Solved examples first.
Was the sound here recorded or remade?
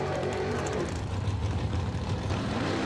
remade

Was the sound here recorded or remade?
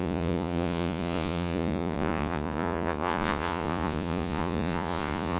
remade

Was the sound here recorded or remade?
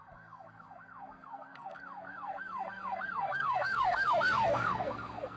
remade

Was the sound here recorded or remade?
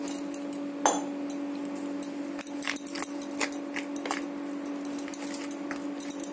recorded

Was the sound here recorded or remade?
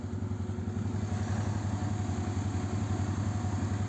recorded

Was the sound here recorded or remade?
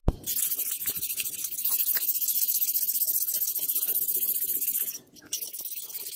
recorded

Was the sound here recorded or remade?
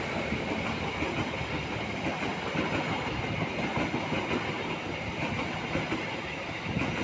recorded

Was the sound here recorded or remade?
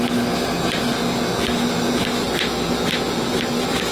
recorded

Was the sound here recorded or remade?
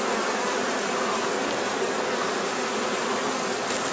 recorded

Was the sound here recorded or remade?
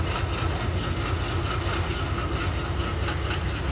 recorded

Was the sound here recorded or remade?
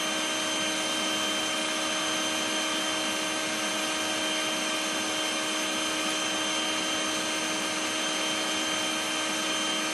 recorded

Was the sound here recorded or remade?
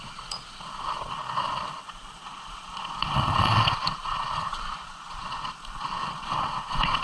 remade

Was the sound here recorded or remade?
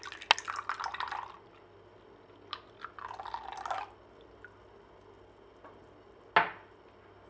recorded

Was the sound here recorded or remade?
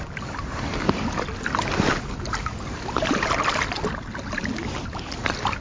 recorded